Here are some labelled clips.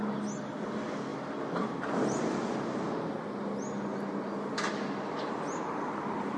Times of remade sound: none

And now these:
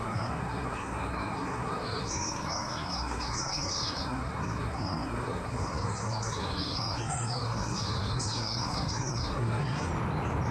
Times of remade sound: 0.0-9.9 (codec, SNAC)